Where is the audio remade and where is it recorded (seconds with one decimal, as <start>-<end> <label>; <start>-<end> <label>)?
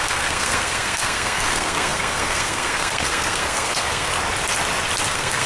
0.0-4.1 remade; 4.1-5.1 recorded; 5.1-5.5 remade